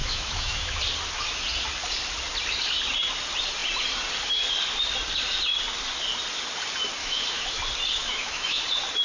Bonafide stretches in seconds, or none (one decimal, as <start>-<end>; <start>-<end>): 0.8-7.0; 7.6-8.0; 8.6-9.0

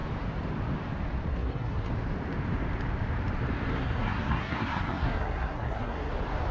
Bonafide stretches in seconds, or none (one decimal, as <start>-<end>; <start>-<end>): 0.0-1.3; 1.9-3.7; 6.1-6.5

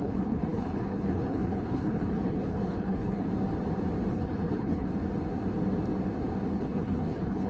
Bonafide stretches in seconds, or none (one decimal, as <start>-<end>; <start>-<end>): 3.3-4.1; 4.9-6.5

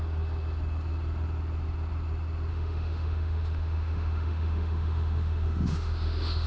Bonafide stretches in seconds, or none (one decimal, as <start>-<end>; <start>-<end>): 0.0-2.5